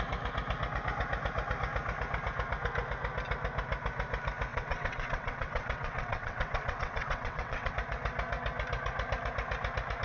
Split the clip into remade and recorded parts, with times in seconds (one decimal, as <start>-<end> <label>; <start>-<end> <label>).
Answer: 0.0-4.5 recorded; 4.5-7.7 remade; 7.7-10.0 recorded